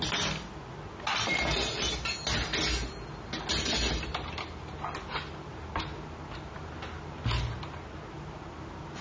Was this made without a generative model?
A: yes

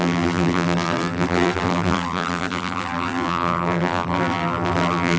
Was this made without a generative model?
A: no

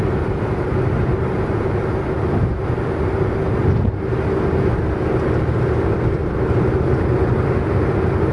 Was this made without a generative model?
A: yes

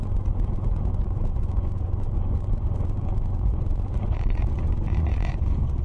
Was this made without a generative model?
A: no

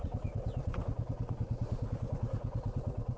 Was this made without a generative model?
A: no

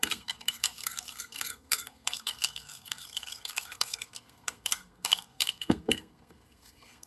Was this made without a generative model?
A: no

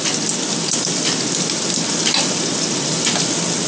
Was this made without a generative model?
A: yes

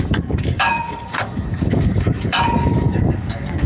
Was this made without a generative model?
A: no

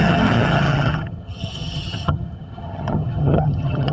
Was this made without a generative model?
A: no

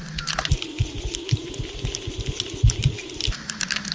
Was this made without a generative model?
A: yes